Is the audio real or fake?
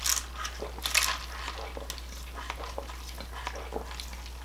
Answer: real